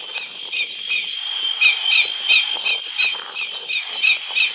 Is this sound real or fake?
real